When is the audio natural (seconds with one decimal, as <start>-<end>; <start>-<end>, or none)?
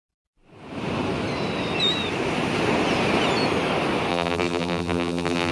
0.0-4.1